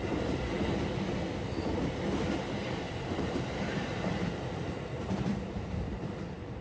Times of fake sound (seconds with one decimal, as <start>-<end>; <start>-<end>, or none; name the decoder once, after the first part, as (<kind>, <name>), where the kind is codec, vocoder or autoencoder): 2.6-6.6 (vocoder, BigVGAN v2)